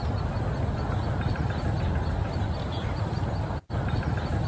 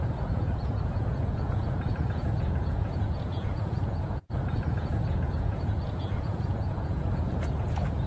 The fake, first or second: second